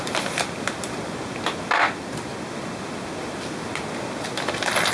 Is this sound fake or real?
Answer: real